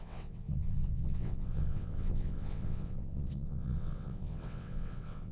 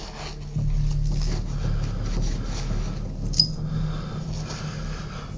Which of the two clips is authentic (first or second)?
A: second